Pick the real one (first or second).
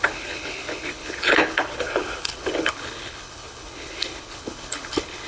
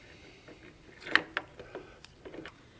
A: second